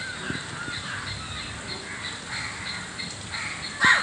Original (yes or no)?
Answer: yes